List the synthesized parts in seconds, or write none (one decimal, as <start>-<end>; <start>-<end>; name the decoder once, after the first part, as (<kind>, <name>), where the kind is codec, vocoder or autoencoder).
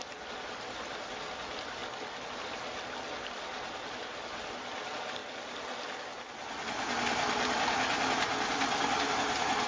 none